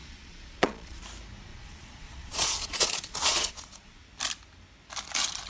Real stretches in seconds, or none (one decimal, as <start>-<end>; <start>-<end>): 1.0-1.5; 4.0-5.5